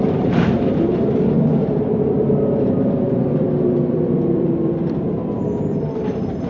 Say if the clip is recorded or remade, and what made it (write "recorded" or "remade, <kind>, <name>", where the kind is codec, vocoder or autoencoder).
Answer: remade, vocoder, BigVGAN v2